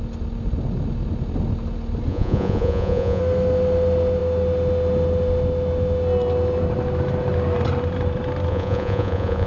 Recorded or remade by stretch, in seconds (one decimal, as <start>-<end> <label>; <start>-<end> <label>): 0.0-2.1 recorded; 2.1-3.2 remade; 3.2-8.5 recorded; 8.5-9.5 remade